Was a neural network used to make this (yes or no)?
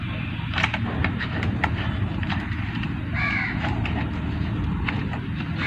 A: yes